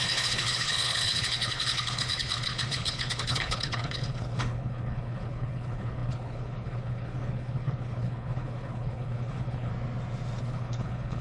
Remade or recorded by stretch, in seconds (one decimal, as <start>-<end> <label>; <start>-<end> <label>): 0.0-9.7 remade; 9.7-10.4 recorded; 10.4-11.2 remade